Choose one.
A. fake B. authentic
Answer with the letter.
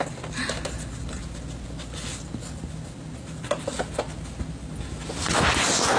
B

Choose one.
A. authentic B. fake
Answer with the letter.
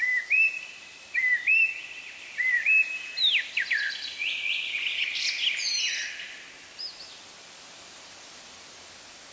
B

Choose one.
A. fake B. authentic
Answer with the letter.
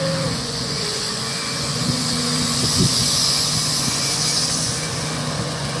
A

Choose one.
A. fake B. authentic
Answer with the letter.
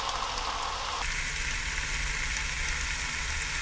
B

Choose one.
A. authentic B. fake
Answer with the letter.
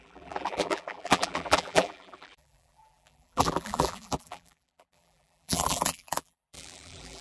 B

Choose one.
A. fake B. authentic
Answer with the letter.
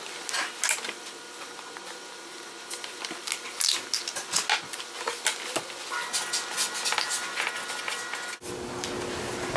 B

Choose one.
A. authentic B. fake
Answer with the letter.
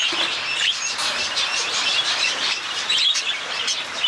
B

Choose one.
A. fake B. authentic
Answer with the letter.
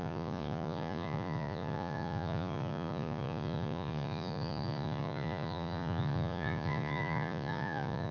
A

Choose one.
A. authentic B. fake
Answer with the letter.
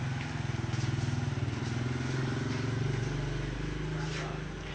A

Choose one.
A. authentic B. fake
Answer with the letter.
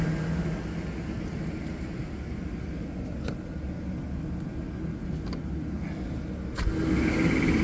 A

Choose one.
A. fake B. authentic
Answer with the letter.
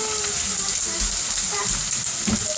B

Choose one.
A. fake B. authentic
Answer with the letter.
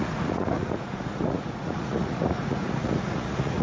A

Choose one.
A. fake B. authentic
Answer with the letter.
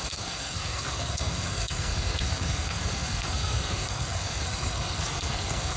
A